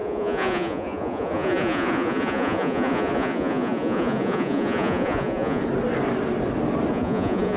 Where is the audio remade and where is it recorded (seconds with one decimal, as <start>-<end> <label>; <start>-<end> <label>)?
0.0-5.6 remade; 5.6-6.9 recorded; 6.9-7.6 remade